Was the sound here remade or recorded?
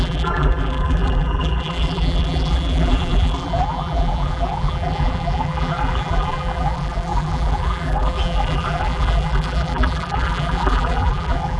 remade